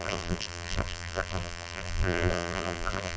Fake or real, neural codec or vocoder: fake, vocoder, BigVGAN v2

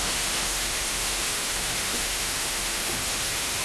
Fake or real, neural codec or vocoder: fake, autoencoder, DAC-VAE